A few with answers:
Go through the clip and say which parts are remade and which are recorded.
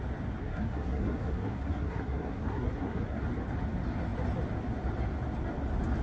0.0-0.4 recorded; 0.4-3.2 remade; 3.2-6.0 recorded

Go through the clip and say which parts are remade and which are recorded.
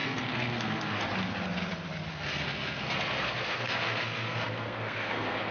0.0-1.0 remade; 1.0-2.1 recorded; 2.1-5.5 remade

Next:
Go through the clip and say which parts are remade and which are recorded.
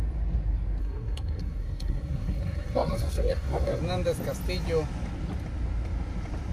0.0-0.8 recorded; 0.8-3.8 remade; 3.8-6.5 recorded